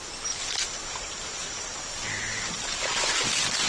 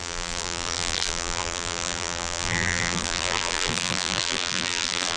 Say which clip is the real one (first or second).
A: first